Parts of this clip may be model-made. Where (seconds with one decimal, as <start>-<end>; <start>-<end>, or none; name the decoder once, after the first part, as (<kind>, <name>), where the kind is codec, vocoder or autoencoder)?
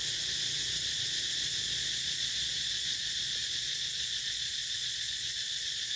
1.6-6.0 (vocoder, Vocos)